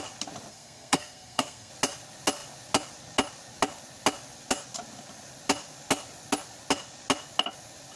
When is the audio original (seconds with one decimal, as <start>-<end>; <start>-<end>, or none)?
0.0-0.5; 1.7-8.0